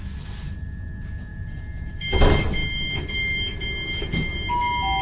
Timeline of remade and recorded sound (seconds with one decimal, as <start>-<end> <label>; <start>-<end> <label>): 0.0-5.0 recorded